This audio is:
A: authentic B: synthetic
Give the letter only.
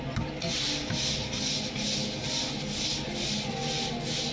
A